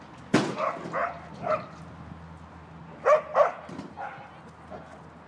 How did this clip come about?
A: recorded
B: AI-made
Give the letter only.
A